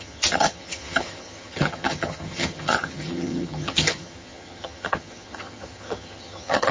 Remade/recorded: remade